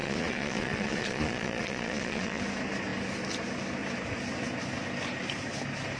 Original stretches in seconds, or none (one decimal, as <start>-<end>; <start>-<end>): 2.4-6.0